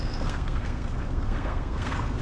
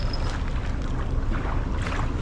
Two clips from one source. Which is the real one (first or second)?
second